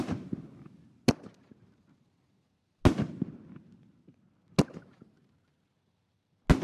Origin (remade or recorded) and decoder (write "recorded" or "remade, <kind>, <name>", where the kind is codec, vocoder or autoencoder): recorded